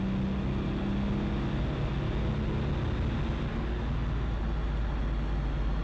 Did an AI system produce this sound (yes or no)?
no